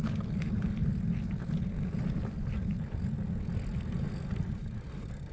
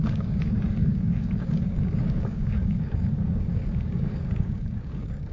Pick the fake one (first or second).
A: second